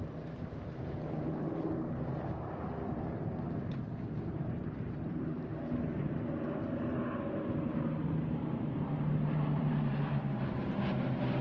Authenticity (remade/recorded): remade